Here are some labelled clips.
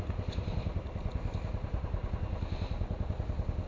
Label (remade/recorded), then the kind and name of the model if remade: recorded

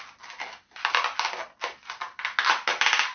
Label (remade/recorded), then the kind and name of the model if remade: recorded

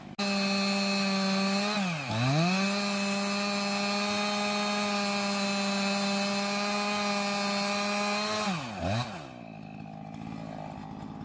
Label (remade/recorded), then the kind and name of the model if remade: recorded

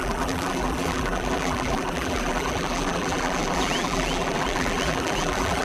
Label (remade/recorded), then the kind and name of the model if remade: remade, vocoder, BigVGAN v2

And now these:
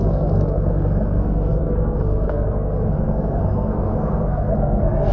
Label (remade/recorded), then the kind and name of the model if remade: remade, codec, SNAC